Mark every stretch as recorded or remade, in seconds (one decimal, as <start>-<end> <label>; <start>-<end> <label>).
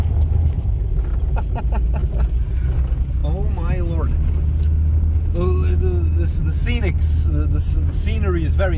0.0-1.1 recorded; 1.1-1.6 remade; 1.6-8.8 recorded